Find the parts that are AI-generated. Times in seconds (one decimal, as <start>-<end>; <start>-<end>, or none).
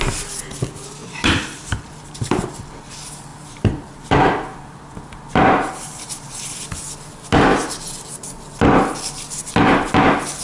1.0-2.6; 3.3-6.3